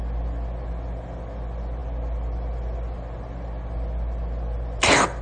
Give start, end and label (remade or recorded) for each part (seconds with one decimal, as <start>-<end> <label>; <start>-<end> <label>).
0.0-5.2 recorded